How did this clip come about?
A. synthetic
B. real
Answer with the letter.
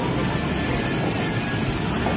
B